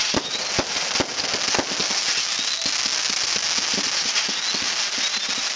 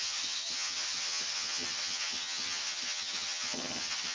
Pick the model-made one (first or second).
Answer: second